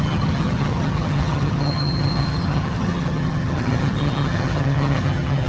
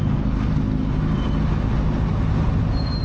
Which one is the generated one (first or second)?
first